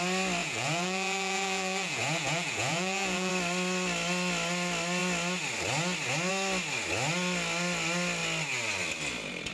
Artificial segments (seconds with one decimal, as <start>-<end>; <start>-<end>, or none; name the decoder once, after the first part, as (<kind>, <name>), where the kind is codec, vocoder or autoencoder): 0.4-3.3 (vocoder, Vocos)